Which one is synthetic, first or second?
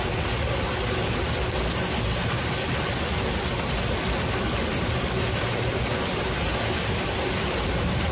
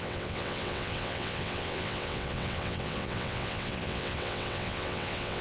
second